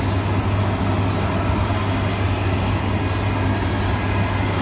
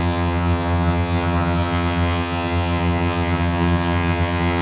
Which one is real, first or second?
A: first